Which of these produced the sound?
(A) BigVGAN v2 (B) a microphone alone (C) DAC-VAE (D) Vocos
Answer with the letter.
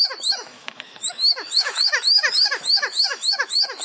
C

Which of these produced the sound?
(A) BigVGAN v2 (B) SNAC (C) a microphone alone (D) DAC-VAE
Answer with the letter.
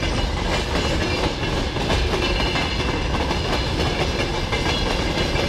C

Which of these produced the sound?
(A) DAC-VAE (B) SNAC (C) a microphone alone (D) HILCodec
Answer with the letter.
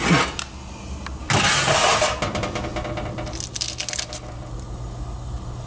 C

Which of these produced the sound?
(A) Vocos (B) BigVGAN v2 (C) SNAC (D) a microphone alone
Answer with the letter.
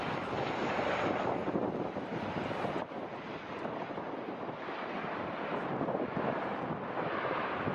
D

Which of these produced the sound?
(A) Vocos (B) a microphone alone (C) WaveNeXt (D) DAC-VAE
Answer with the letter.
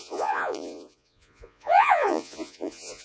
A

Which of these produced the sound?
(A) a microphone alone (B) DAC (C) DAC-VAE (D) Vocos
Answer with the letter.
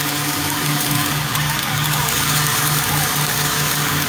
B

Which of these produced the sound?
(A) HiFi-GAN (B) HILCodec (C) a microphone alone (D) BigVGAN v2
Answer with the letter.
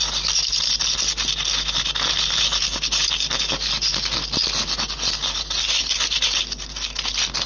C